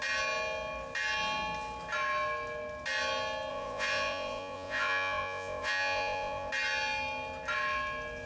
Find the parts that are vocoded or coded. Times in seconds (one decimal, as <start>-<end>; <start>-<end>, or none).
3.5-6.5